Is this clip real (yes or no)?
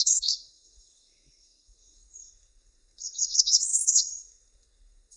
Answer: no